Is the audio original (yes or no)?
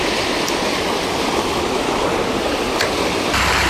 yes